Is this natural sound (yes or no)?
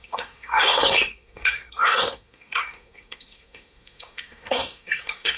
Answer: no